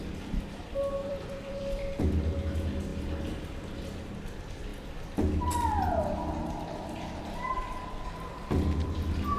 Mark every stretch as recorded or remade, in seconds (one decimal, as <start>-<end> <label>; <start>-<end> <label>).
0.0-1.0 recorded; 1.0-2.0 remade; 2.0-9.4 recorded